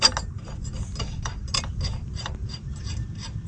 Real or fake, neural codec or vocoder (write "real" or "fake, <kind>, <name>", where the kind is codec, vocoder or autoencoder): real